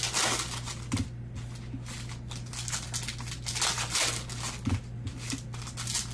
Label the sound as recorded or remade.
recorded